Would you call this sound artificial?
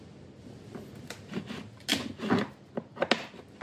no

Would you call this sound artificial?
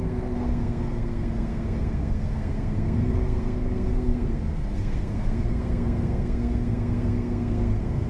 yes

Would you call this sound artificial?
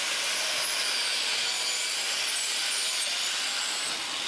no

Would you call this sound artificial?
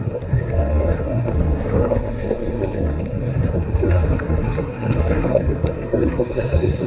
yes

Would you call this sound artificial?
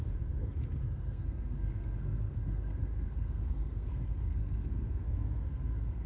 yes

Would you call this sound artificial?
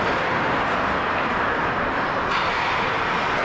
no